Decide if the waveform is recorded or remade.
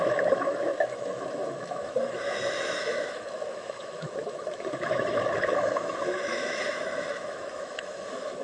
remade